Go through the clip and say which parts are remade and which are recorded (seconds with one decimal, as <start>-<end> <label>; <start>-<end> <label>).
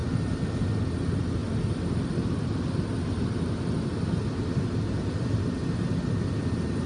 0.0-6.9 recorded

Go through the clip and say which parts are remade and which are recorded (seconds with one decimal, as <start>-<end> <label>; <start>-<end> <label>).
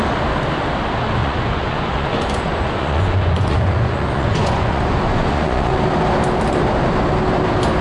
0.0-1.2 recorded; 1.2-5.8 remade; 5.8-7.8 recorded